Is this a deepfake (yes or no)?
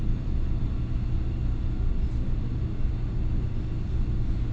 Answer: no